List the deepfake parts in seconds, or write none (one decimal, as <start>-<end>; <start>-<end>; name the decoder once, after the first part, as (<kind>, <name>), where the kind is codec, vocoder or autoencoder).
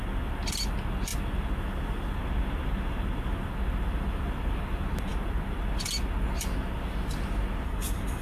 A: none